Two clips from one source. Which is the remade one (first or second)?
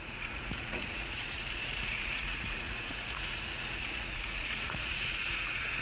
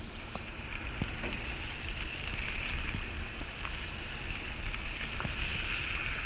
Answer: first